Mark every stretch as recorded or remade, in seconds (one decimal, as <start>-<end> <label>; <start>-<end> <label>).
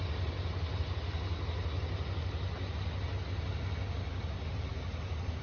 0.0-5.4 recorded